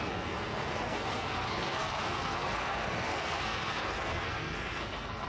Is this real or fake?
fake